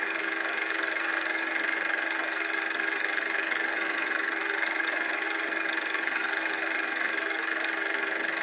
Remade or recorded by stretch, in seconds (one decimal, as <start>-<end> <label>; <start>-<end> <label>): 0.0-8.4 remade

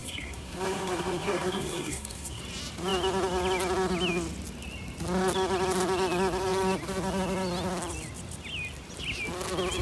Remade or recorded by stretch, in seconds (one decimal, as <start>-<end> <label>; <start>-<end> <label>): 0.0-2.4 remade; 2.4-9.8 recorded

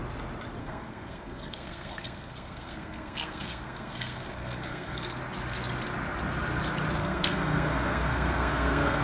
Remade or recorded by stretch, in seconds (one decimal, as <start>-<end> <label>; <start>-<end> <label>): 0.0-0.6 recorded; 0.6-5.2 remade; 5.2-7.0 recorded; 7.0-9.0 remade

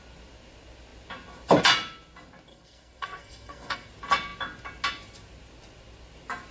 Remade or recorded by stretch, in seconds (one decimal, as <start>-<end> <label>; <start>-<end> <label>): 0.0-2.5 recorded; 2.5-3.9 remade; 3.9-6.5 recorded